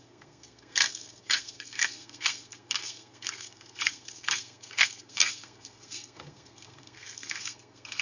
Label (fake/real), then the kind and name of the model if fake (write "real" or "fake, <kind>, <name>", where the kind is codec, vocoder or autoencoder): fake, codec, SNAC